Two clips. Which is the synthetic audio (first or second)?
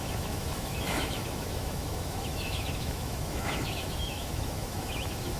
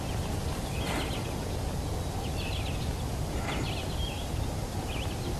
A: first